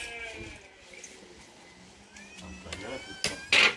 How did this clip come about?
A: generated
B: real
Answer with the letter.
B